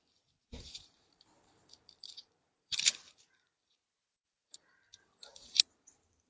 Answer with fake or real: fake